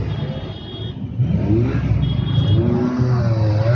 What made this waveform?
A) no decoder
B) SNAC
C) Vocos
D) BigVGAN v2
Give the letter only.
A